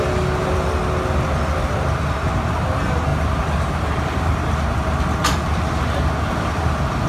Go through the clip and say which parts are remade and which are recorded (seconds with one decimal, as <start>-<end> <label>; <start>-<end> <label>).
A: 0.0-3.1 recorded; 3.1-4.8 remade; 4.8-7.1 recorded